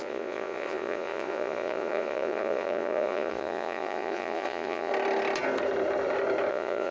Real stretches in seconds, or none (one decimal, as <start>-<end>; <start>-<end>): 4.9-6.5